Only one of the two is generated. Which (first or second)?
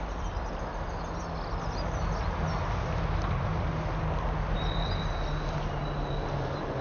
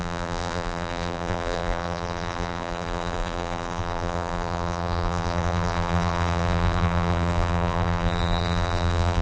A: second